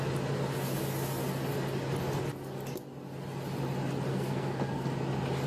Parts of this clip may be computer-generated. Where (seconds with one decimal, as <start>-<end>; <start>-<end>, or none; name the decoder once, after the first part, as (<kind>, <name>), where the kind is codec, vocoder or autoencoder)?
4.1-4.9 (codec, SNAC)